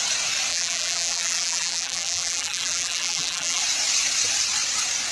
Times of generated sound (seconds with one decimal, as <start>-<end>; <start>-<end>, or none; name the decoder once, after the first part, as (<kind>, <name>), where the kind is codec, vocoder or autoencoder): 0.5-3.6 (vocoder, BigVGAN v2)